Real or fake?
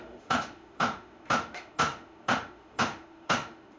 fake